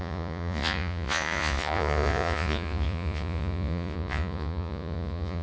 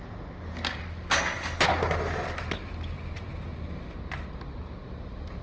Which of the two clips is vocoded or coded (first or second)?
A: first